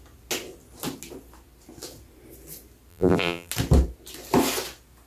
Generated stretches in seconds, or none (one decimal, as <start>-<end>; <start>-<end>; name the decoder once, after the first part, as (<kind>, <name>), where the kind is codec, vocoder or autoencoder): 2.9-3.5 (vocoder, BigVGAN v2)